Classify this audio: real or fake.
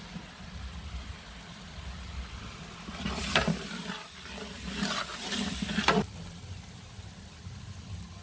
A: real